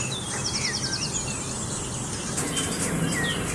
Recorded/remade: recorded